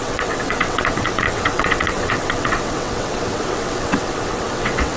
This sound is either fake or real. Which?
fake